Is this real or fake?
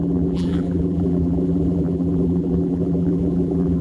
fake